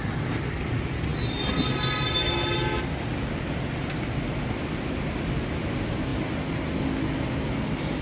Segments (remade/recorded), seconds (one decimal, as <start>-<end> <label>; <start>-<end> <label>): 0.0-8.0 recorded